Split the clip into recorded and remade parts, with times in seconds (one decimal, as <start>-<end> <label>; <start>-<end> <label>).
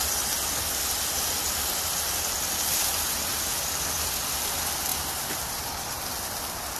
0.0-6.8 recorded